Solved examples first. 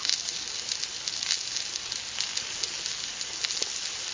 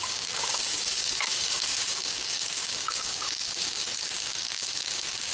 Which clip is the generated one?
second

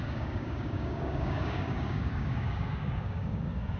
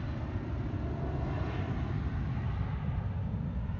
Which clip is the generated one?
first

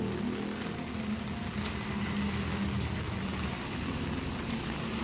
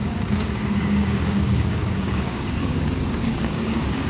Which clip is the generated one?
second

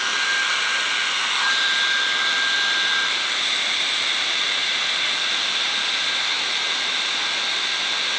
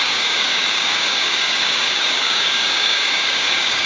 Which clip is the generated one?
second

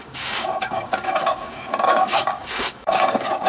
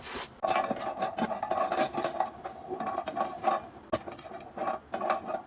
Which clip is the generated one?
first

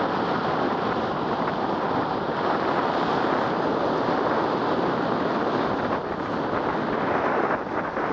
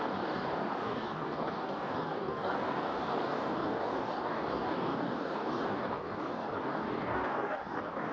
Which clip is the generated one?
second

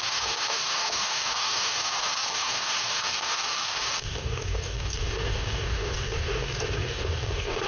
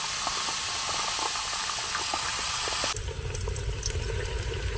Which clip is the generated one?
first